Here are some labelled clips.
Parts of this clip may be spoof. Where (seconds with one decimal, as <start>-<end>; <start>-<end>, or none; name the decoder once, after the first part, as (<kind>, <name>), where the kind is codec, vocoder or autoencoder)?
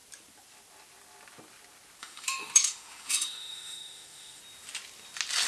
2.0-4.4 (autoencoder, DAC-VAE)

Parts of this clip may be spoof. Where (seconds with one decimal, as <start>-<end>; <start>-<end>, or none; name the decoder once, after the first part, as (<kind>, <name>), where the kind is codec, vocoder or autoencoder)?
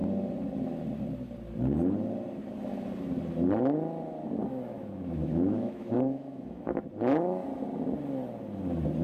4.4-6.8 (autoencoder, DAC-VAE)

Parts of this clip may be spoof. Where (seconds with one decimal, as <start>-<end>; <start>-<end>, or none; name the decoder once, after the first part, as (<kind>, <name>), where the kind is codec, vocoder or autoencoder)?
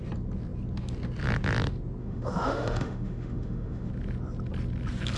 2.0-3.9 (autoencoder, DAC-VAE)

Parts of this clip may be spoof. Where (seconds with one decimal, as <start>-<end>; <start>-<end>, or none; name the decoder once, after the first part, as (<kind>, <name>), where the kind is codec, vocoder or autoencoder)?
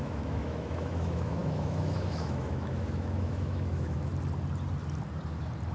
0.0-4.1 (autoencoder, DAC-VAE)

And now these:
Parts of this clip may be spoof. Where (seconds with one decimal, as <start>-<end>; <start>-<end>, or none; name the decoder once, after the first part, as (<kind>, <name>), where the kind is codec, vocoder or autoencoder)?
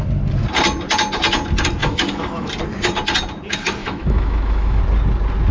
1.8-2.5 (autoencoder, DAC-VAE); 3.8-4.8